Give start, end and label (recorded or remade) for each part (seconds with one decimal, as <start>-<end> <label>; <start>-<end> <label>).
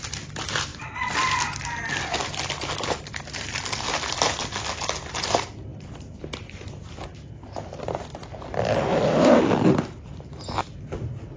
0.0-0.7 recorded; 0.7-2.7 remade; 2.7-7.1 recorded; 7.1-7.8 remade; 7.8-8.3 recorded; 8.3-10.8 remade; 10.8-11.4 recorded